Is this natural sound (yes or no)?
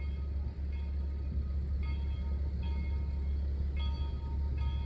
yes